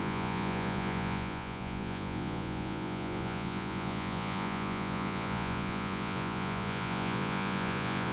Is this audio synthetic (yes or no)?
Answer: yes